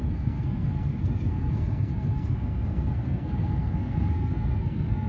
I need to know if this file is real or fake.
fake